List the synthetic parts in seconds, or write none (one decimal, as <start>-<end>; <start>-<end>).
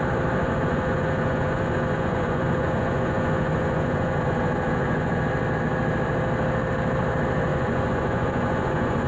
0.4-5.2; 7.5-9.1